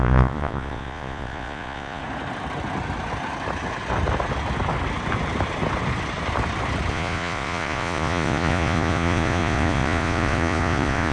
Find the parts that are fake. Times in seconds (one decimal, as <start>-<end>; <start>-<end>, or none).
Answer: 0.0-2.0; 6.9-11.1